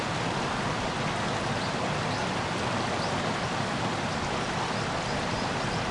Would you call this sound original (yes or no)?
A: yes